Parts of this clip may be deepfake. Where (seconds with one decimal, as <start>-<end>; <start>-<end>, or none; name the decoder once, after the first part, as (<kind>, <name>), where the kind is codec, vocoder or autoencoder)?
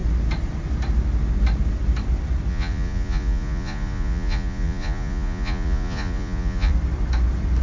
2.5-6.7 (vocoder, Vocos)